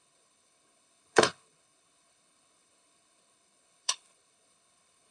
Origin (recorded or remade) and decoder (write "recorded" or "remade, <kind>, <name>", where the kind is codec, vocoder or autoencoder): remade, codec, HILCodec